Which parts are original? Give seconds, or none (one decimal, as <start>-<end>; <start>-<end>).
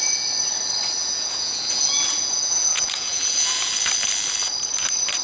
0.0-1.0; 3.7-5.2